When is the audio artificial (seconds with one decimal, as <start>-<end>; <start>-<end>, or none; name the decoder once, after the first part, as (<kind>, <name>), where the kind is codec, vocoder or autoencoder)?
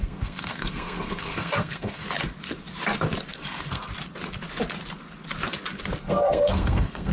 0.0-2.0 (codec, SNAC); 3.3-3.9; 6.0-7.1